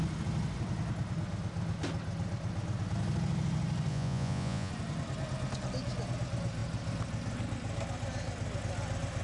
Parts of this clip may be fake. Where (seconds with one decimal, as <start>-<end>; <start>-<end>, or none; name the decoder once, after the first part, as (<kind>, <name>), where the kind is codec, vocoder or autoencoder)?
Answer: 3.9-4.7 (vocoder, Vocos)

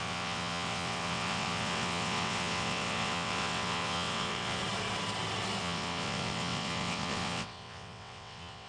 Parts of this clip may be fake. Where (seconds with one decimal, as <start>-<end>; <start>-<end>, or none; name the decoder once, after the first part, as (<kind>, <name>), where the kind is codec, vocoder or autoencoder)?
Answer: 0.0-4.6 (vocoder, WaveNeXt); 5.6-8.7

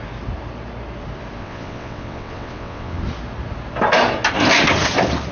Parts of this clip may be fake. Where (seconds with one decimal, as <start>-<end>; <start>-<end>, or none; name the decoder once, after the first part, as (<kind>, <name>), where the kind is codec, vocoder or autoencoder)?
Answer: 1.4-3.0 (vocoder, WaveNeXt)

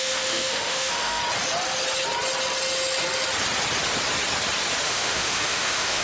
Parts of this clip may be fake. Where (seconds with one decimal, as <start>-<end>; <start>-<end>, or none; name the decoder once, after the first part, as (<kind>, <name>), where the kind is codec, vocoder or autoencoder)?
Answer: 0.0-1.2 (autoencoder, DAC-VAE); 4.8-6.0

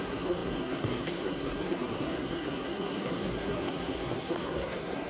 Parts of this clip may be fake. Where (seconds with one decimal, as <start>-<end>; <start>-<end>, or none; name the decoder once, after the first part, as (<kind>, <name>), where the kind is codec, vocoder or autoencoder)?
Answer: 0.0-5.1 (codec, SNAC)

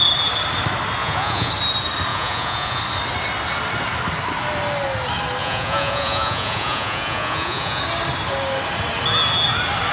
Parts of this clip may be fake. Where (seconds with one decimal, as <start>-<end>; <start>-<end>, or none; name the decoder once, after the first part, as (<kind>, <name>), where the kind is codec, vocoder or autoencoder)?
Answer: 1.0-1.5 (vocoder, Vocos); 2.1-2.8; 5.4-7.8

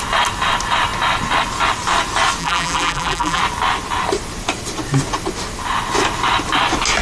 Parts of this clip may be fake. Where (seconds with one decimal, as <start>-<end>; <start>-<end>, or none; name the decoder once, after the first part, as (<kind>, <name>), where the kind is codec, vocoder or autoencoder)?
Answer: 2.4-3.4 (vocoder, BigVGAN v2)